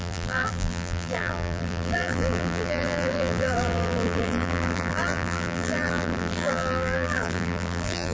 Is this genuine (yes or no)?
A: no